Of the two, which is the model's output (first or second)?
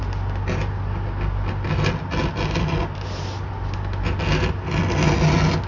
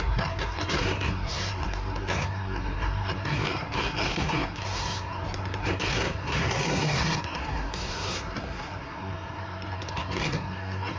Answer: second